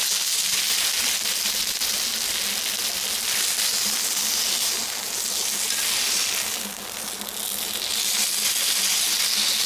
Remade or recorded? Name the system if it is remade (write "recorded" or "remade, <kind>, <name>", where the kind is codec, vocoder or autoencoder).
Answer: recorded